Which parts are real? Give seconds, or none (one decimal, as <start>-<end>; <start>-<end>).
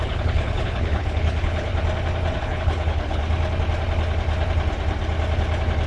1.7-2.4; 3.2-5.9